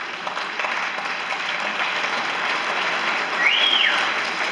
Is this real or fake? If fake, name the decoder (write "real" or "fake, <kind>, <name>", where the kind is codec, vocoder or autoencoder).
fake, vocoder, BigVGAN v2